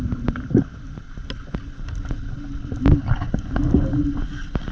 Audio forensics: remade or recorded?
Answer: recorded